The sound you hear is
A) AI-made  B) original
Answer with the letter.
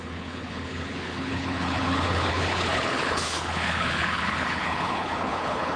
A